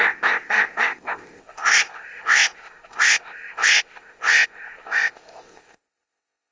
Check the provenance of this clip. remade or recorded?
remade